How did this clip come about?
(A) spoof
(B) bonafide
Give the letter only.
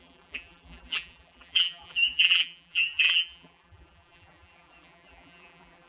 A